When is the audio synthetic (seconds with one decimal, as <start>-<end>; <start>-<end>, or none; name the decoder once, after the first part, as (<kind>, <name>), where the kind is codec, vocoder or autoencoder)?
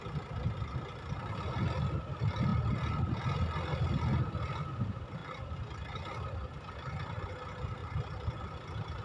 none